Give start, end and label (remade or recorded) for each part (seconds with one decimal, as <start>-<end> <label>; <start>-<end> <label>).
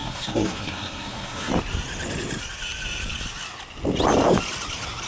0.0-1.5 remade; 1.5-5.1 recorded